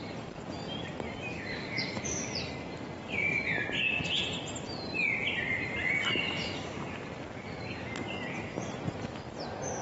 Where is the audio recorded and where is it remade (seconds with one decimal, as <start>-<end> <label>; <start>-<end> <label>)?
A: 0.0-1.3 recorded; 1.3-2.3 remade; 2.3-9.8 recorded